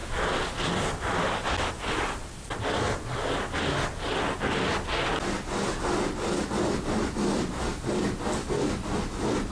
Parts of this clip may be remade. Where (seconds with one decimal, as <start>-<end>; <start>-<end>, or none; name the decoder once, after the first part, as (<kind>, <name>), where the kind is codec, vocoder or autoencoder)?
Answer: none